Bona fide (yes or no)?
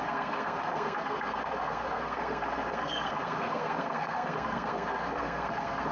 no